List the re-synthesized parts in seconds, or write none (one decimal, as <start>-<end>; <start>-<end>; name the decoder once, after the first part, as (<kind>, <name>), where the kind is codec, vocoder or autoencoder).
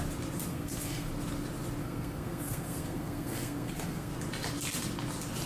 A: 0.5-1.1 (codec, SNAC); 1.8-4.1